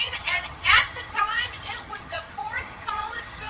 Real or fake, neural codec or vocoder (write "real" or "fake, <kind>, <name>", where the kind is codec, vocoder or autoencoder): fake, vocoder, HiFi-GAN